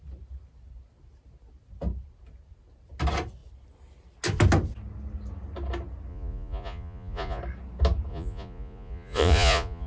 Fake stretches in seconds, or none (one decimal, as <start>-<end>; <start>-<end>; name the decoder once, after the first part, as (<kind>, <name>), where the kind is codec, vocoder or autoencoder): 6.1-7.4 (vocoder, Vocos); 8.1-9.9